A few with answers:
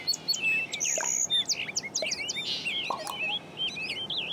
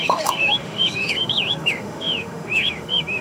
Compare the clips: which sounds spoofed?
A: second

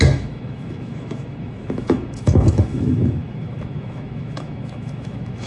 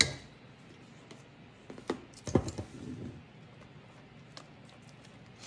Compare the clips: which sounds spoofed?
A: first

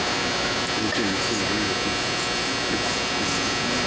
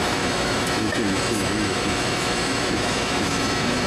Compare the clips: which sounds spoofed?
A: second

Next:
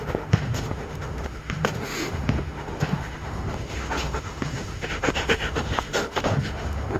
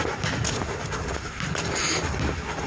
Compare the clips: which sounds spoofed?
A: first